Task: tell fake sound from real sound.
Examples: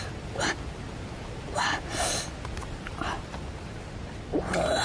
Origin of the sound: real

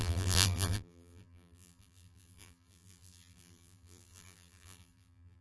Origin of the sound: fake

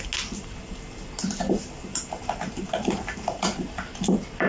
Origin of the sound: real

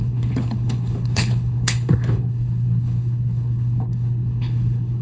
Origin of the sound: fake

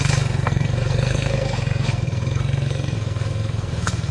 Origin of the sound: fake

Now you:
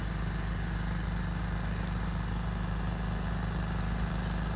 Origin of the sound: real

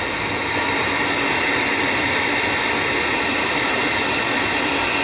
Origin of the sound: real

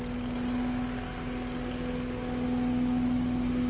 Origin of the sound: real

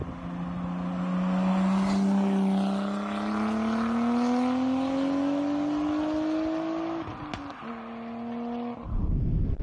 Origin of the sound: real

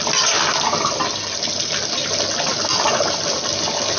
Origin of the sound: real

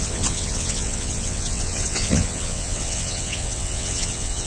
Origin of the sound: fake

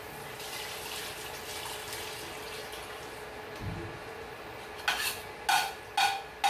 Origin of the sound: real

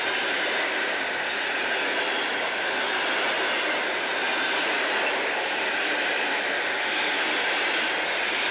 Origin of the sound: real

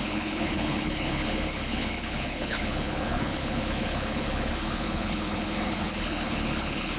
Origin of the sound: fake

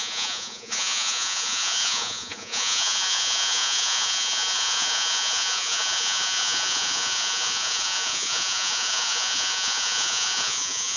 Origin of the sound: fake